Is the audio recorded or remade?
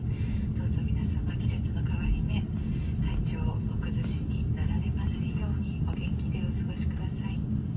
recorded